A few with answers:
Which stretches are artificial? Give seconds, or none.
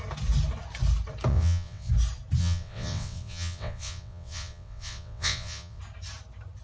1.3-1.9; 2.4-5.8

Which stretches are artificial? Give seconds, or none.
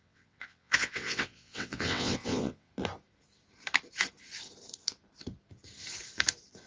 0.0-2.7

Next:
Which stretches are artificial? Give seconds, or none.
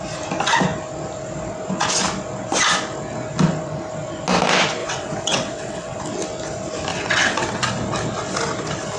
4.8-6.0; 6.9-7.7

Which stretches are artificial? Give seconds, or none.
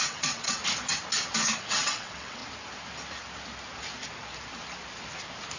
0.0-0.6; 1.7-2.4